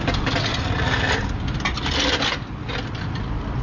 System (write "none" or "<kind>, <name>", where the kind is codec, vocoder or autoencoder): none